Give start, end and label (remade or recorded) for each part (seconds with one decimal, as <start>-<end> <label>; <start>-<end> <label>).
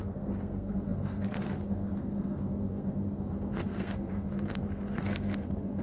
0.0-5.8 remade